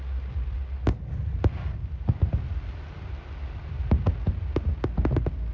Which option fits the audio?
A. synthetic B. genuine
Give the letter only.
B